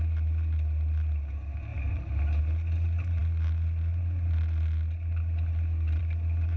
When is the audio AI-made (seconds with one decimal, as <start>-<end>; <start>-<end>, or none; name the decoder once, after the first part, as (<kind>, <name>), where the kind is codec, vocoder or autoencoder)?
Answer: none